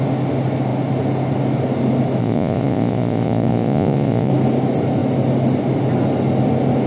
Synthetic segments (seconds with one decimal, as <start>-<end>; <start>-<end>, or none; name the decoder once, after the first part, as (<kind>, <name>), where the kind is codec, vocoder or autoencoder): 2.2-4.3 (vocoder, Vocos)